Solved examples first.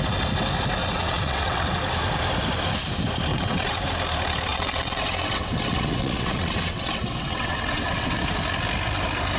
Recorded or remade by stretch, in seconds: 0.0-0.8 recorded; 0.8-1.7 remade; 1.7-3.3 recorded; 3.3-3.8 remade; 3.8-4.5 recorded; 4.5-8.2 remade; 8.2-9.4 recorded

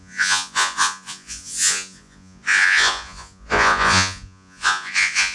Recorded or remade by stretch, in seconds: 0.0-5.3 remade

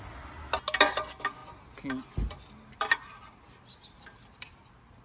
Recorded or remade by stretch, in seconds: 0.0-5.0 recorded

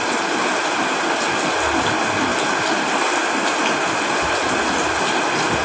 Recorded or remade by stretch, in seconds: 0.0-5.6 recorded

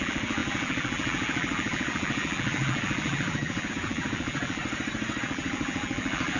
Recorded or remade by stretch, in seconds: 0.0-4.6 remade; 4.6-5.2 recorded; 5.2-6.4 remade